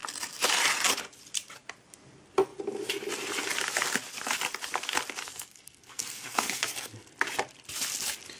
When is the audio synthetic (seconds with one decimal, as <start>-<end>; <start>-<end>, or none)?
5.2-7.1